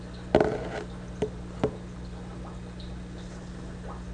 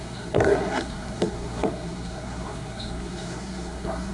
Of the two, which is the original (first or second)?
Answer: first